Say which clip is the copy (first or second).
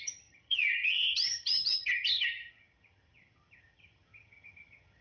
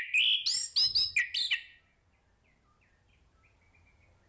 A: first